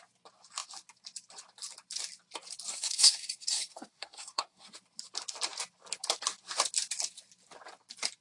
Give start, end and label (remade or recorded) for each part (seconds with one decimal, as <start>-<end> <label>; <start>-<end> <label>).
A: 0.0-2.7 recorded; 2.7-4.7 remade; 4.7-8.2 recorded